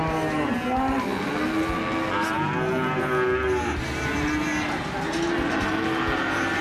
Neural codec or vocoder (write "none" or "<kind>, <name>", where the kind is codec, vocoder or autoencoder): none